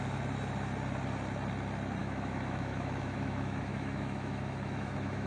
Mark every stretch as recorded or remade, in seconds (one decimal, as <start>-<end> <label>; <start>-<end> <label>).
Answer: 0.0-2.0 recorded; 2.0-5.3 remade